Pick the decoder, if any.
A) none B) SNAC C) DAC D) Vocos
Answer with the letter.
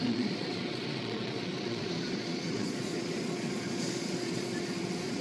D